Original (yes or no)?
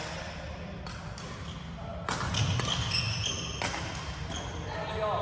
yes